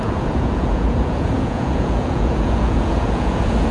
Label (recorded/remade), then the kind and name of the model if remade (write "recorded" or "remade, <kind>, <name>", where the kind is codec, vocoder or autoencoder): remade, vocoder, Vocos